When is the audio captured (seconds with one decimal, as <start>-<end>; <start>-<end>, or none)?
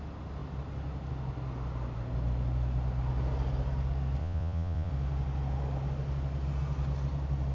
0.0-4.2; 4.9-7.5